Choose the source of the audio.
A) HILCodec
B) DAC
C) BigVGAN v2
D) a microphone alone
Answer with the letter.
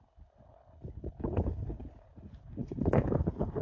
A